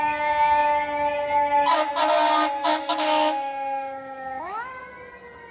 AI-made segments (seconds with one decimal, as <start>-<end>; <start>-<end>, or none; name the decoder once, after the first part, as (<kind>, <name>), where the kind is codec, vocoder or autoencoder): 2.6-4.7 (autoencoder, DAC-VAE)